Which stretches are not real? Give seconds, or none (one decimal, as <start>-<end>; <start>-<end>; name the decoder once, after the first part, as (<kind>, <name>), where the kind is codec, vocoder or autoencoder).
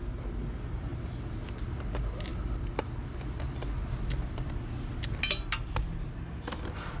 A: none